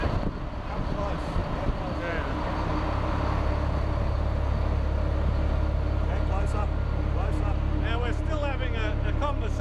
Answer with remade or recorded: recorded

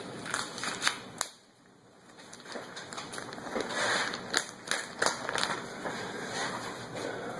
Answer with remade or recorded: recorded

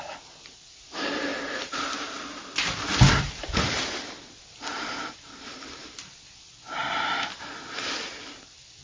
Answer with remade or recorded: remade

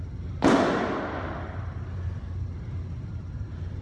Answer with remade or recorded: recorded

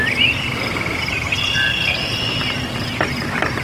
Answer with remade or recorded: remade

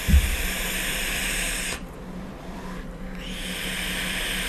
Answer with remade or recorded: remade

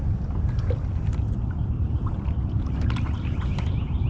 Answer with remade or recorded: remade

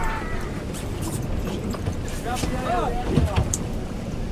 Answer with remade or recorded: remade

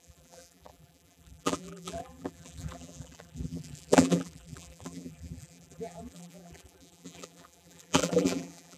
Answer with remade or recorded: remade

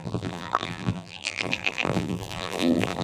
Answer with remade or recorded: remade